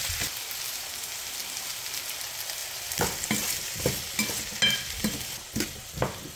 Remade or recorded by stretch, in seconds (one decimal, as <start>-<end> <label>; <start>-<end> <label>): 0.0-6.4 recorded